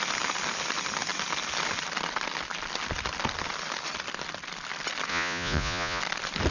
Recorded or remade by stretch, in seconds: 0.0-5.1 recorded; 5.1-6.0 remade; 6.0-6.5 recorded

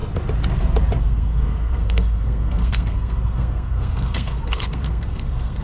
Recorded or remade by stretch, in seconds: 0.0-1.0 recorded; 1.0-5.6 remade

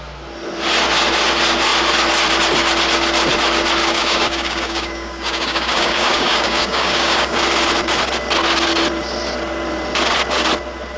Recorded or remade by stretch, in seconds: 0.0-3.8 recorded; 3.8-7.4 remade; 7.4-11.0 recorded

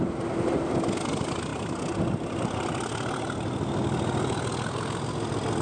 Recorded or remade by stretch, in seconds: 0.0-5.6 recorded

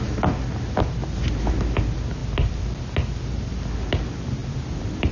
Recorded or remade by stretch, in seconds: 0.0-2.2 recorded; 2.2-2.8 remade; 2.8-4.4 recorded; 4.4-5.1 remade

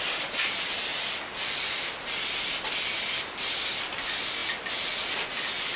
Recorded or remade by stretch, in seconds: 0.0-5.8 recorded

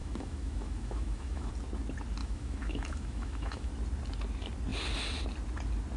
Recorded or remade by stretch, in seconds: 0.0-1.5 remade; 1.5-2.2 recorded; 2.2-3.7 remade; 3.7-6.0 recorded